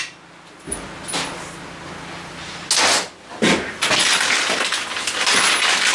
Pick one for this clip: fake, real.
real